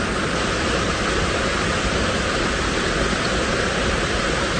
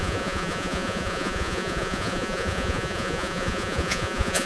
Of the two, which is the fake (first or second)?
second